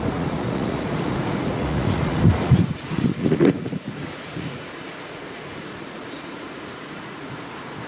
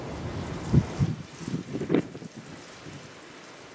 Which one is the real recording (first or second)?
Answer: second